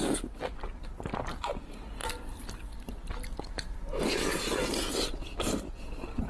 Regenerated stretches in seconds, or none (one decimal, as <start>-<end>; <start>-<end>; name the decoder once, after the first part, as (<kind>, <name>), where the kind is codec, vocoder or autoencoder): none